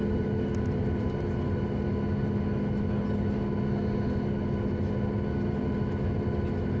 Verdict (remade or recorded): recorded